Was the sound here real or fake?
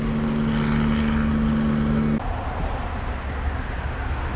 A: real